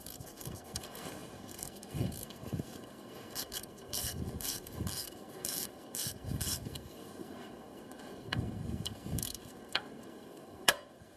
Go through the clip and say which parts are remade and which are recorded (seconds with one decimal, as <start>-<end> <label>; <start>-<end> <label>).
0.0-11.2 remade